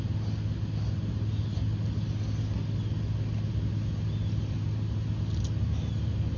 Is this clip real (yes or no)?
yes